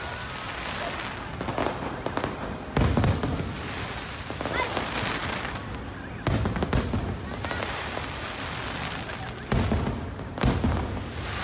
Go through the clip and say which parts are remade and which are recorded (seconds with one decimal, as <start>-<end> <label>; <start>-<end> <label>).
0.0-11.4 recorded